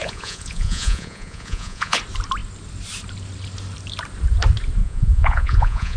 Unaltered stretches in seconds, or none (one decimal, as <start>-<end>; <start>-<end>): 2.0-4.8